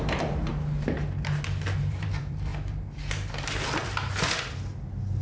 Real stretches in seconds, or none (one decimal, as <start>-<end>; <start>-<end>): 0.5-1.8; 2.5-5.2